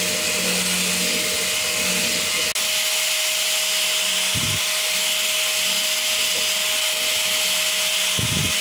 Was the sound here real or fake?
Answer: real